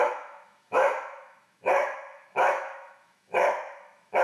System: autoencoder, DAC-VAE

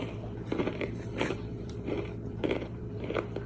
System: vocoder, BigVGAN v2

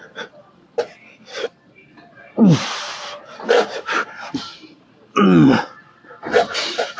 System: vocoder, BigVGAN v2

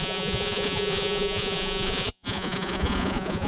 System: vocoder, Vocos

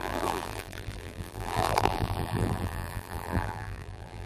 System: vocoder, BigVGAN v2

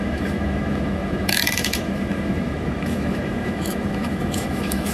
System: autoencoder, DAC-VAE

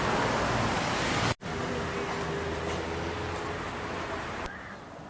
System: none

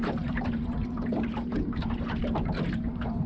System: vocoder, BigVGAN v2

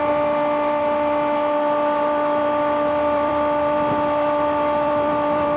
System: vocoder, BigVGAN v2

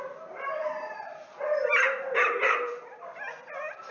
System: vocoder, BigVGAN v2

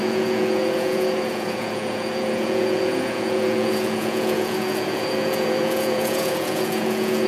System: vocoder, Vocos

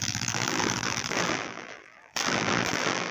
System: vocoder, BigVGAN v2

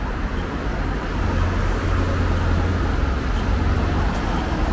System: none